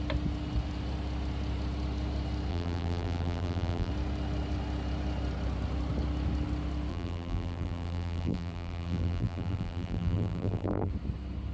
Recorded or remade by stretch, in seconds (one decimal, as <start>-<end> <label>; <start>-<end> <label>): 0.0-2.5 recorded; 2.5-3.9 remade; 3.9-6.9 recorded; 6.9-10.9 remade; 10.9-11.5 recorded